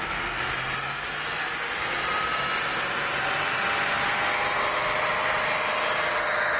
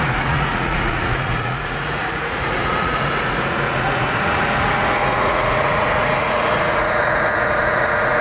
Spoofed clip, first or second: second